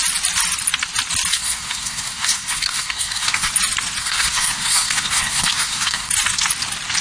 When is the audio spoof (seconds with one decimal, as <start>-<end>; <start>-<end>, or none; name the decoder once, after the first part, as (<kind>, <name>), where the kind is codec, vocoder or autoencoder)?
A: 1.3-3.5 (codec, SNAC); 4.0-6.1